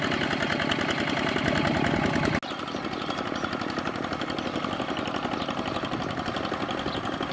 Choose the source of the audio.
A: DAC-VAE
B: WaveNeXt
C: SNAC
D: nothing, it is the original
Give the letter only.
D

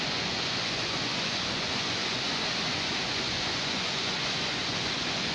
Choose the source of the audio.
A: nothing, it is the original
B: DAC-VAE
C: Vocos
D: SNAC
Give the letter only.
C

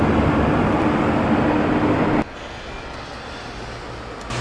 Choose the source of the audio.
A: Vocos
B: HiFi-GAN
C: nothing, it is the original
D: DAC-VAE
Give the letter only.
C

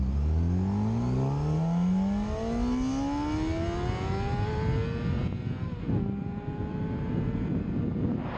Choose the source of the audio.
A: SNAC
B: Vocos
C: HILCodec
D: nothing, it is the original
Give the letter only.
D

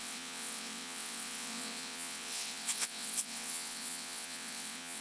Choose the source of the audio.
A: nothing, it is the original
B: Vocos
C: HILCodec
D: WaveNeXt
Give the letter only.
D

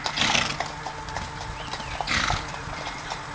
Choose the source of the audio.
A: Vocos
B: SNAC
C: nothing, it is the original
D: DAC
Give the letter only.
C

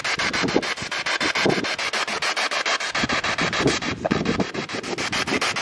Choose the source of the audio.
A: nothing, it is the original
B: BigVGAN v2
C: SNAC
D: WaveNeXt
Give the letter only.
A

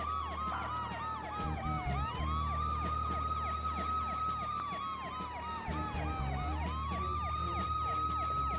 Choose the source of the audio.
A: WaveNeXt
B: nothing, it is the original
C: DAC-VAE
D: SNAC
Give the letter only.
B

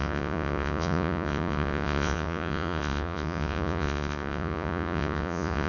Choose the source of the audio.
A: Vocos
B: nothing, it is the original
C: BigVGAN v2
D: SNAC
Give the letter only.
A